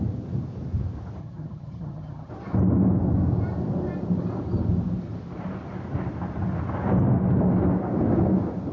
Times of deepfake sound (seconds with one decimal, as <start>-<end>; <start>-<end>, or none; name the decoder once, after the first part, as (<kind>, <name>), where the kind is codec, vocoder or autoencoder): 1.2-2.3 (vocoder, HiFi-GAN)